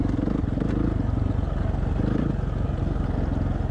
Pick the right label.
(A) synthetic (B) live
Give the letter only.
B